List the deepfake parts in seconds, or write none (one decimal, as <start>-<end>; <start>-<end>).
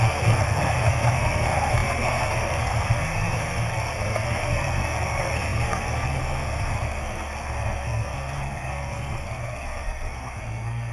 0.0-10.9